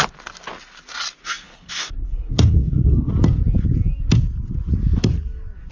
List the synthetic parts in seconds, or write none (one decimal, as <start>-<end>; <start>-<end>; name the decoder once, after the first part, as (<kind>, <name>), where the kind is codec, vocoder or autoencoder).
1.2-3.1 (codec, SNAC)